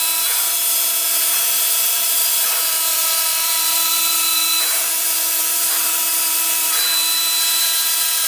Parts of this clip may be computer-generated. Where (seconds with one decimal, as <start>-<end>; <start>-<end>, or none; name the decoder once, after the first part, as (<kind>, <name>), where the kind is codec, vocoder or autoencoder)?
1.1-4.6 (vocoder, BigVGAN v2); 5.4-6.8